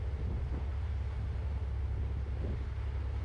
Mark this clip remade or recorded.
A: recorded